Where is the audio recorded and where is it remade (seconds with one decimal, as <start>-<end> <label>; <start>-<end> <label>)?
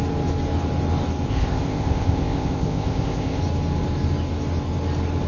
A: 0.0-1.3 recorded; 1.3-3.4 remade; 3.4-5.3 recorded